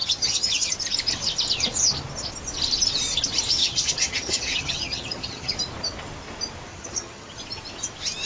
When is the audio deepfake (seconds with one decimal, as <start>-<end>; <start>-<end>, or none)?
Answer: 0.0-0.7; 3.6-5.5; 6.7-7.4